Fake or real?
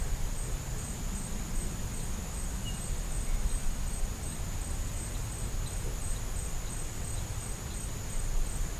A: real